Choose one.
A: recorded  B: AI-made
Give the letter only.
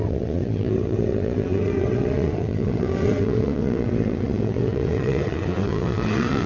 B